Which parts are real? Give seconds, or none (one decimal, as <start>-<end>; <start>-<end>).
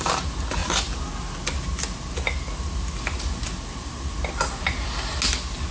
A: 0.0-5.7